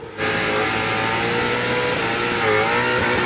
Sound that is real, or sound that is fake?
real